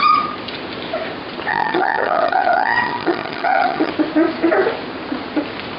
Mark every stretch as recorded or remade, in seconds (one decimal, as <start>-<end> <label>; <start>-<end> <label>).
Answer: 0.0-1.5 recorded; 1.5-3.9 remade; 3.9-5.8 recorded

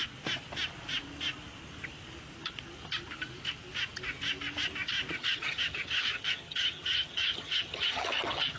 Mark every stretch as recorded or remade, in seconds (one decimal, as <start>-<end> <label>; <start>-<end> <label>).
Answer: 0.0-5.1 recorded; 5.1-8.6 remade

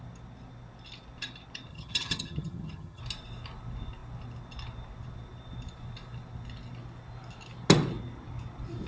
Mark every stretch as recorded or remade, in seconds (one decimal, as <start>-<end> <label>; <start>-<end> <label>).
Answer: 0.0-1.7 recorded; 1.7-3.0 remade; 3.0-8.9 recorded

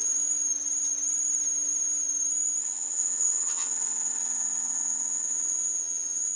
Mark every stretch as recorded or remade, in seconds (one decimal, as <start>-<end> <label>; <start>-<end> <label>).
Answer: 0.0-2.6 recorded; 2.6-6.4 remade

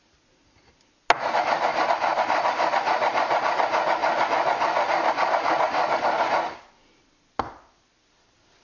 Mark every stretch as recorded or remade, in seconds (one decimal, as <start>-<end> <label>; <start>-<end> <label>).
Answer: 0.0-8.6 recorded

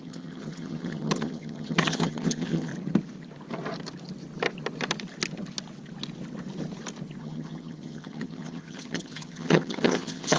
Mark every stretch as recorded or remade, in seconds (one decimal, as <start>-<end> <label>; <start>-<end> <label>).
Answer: 0.0-2.7 remade; 2.7-7.2 recorded; 7.2-10.4 remade